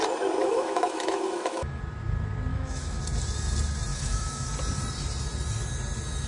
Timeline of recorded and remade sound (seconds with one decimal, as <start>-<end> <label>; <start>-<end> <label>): 0.0-0.4 recorded; 0.4-1.8 remade; 1.8-2.5 recorded; 2.5-3.0 remade; 3.0-3.9 recorded; 3.9-4.5 remade; 4.5-6.3 recorded